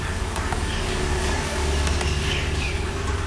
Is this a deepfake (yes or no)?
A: yes